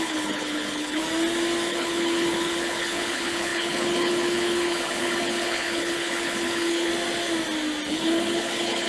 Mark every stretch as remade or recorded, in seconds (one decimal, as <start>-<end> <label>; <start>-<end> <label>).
0.0-1.0 remade; 1.0-1.7 recorded; 1.7-6.9 remade; 6.9-7.9 recorded; 7.9-8.9 remade